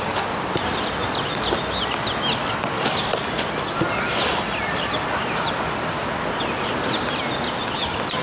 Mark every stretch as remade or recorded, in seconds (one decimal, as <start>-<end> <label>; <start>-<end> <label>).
0.0-8.2 recorded